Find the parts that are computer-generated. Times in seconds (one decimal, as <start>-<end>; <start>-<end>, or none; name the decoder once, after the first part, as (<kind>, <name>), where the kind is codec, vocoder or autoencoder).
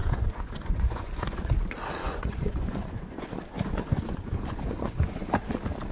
0.0-1.5 (vocoder, Vocos); 2.0-5.3